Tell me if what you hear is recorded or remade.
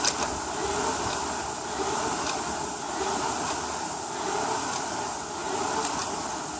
recorded